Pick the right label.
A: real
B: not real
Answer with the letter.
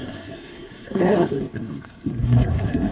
B